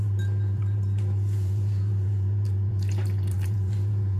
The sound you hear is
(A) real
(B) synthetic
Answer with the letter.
B